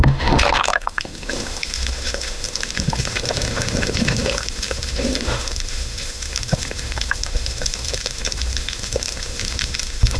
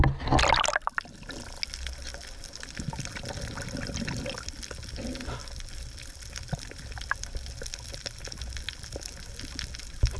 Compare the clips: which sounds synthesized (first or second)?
first